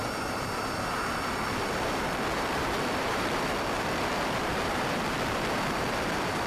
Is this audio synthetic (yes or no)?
yes